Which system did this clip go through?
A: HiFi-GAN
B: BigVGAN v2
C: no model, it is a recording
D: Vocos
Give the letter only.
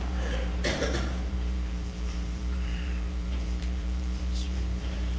B